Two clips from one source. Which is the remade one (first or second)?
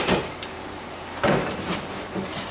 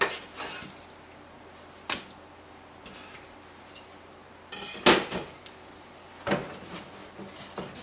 first